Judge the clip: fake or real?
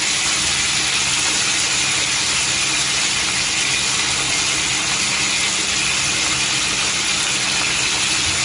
real